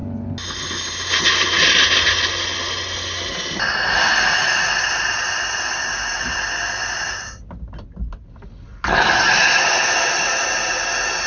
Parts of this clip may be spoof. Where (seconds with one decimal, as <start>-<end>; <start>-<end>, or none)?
none

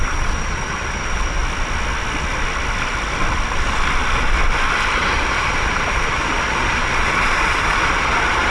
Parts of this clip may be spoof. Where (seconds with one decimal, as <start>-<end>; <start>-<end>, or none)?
0.0-1.4; 5.0-8.5

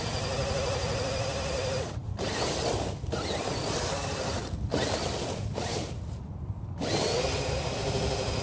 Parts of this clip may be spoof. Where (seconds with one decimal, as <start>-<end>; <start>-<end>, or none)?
none

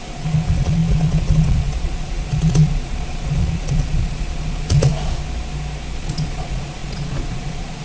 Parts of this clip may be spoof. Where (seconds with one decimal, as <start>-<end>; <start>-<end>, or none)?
0.0-4.9; 6.0-7.8

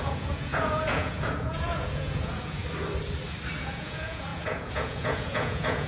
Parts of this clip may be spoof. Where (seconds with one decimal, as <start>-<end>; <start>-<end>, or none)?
0.0-2.6; 3.6-5.9

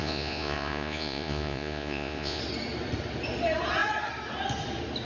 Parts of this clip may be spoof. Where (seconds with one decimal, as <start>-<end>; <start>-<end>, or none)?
0.0-2.4

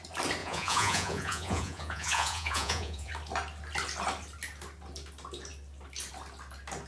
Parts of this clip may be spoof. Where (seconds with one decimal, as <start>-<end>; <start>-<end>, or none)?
0.4-3.1

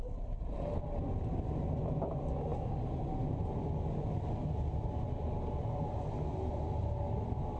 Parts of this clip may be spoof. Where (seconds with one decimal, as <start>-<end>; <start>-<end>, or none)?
none